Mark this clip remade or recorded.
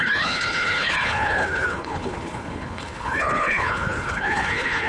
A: remade